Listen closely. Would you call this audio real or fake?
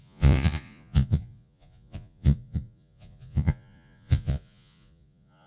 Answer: fake